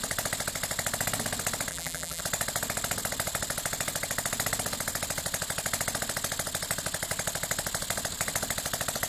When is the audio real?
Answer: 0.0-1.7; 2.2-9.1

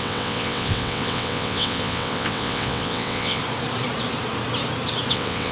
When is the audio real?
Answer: 3.4-5.1

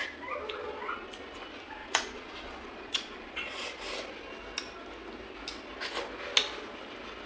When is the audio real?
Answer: 0.0-1.8; 3.8-7.3